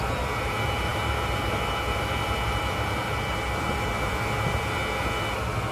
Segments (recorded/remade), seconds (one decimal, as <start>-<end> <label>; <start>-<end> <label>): 0.0-4.8 remade; 4.8-5.7 recorded